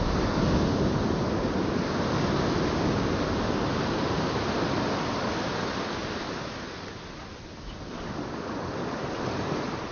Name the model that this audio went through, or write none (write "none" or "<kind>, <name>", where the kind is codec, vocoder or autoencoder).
none